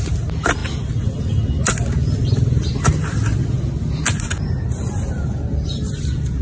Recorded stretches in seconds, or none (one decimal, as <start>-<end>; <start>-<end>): 0.0-6.4